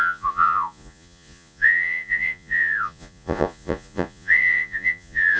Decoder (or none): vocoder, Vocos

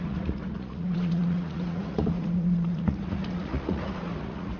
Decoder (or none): vocoder, Vocos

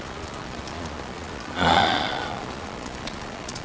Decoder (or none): vocoder, Vocos